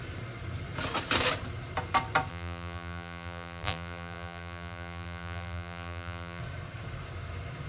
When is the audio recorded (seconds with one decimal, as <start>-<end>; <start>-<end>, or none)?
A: 0.0-2.3; 6.4-7.7